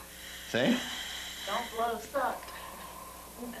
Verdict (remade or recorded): remade